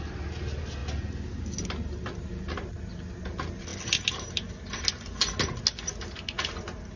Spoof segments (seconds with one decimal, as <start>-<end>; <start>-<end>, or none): none